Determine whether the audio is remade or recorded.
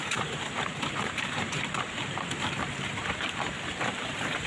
remade